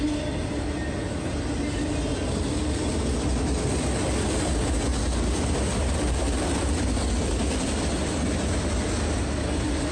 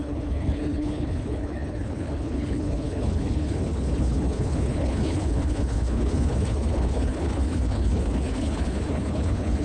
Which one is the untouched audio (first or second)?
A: first